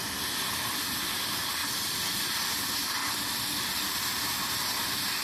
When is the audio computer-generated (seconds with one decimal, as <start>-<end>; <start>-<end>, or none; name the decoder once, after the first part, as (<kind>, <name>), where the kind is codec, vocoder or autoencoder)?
1.6-2.5 (vocoder, BigVGAN v2); 3.0-3.8